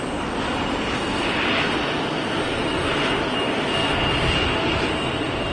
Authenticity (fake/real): real